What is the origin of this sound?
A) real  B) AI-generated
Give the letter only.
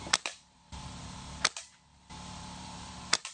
B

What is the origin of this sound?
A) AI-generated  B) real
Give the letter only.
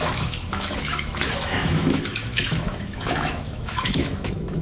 A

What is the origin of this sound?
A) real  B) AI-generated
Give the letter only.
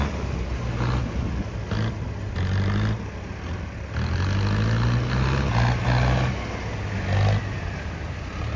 A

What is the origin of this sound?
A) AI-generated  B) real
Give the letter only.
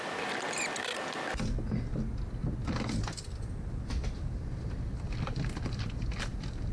B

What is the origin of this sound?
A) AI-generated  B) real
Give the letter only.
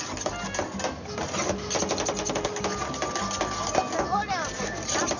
B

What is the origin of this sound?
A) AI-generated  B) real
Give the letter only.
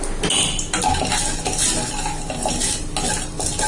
B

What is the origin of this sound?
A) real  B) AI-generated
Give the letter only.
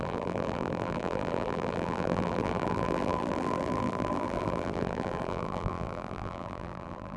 B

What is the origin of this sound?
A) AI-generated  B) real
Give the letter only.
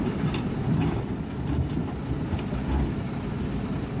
B